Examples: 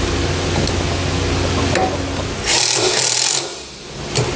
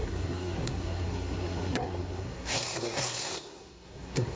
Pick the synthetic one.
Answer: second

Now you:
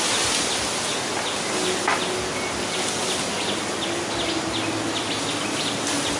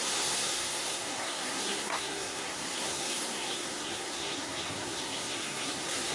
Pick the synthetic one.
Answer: second